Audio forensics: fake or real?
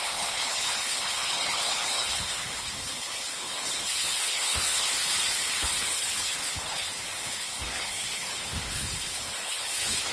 fake